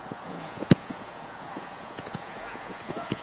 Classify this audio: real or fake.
fake